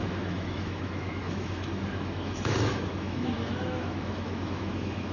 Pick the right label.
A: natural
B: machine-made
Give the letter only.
B